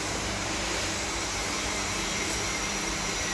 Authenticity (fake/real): fake